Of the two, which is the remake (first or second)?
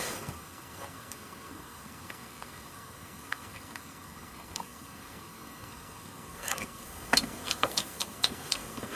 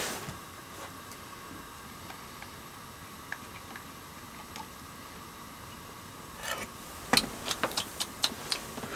first